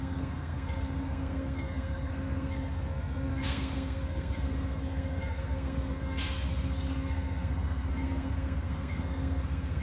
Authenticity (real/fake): fake